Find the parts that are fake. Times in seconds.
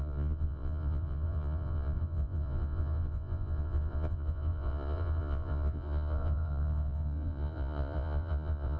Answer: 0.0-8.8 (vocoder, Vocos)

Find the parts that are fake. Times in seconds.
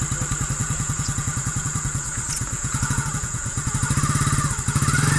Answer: 0.6-3.7 (vocoder, Vocos)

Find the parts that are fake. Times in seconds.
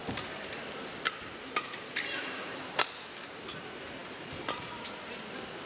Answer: none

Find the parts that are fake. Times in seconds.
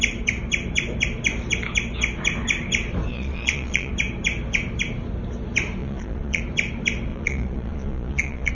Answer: 3.1-3.9 (vocoder, Vocos); 5.8-6.4; 7.1-8.5